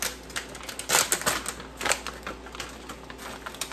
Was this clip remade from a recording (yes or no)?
no